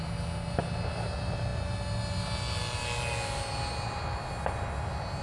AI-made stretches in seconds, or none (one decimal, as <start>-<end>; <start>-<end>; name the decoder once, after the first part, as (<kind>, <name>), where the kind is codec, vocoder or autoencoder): none